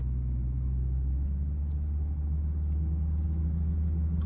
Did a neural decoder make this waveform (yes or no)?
no